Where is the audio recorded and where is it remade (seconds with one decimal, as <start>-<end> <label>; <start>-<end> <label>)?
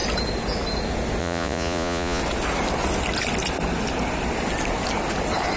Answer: 0.0-1.2 recorded; 1.2-2.2 remade; 2.2-5.6 recorded